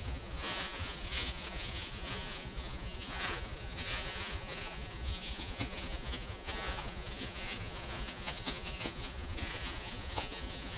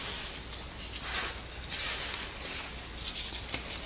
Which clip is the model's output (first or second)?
first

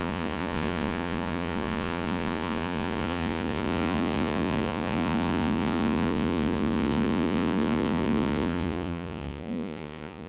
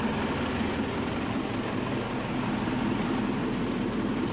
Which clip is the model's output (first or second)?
first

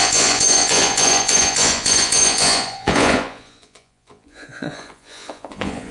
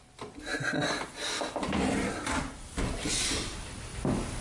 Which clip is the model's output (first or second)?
first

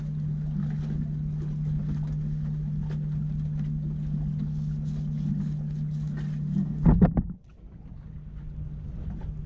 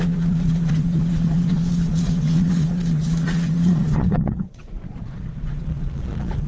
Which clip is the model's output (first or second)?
second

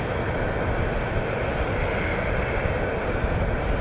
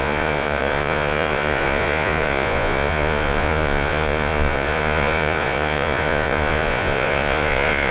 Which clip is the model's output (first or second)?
second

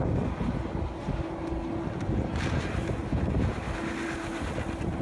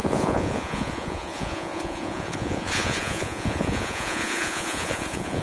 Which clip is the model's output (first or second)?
second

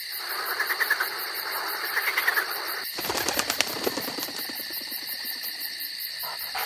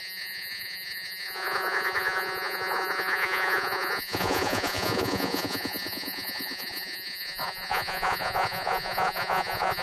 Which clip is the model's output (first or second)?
second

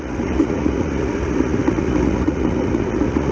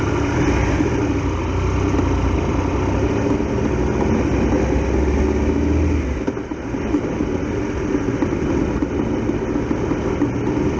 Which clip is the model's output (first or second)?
first